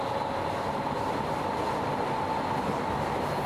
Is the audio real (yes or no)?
yes